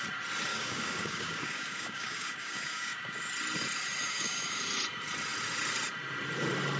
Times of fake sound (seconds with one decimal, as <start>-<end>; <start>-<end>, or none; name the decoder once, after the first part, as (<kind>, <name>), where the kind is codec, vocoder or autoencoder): 0.5-3.2 (codec, DAC); 4.0-4.6